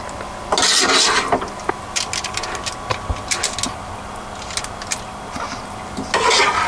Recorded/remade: recorded